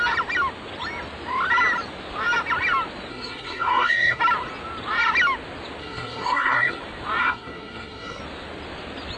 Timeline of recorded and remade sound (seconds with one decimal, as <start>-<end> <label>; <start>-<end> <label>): 0.0-3.1 recorded; 3.1-4.2 remade; 4.2-5.8 recorded; 5.8-6.8 remade; 6.8-7.2 recorded; 7.2-8.2 remade; 8.2-9.2 recorded